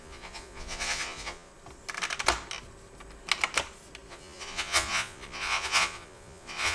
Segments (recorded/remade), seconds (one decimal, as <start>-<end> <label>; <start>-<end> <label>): 0.0-1.5 remade; 1.5-4.1 recorded; 4.1-6.7 remade